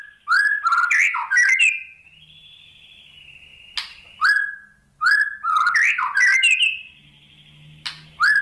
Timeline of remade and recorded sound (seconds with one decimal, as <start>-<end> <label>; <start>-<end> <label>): 0.0-8.4 recorded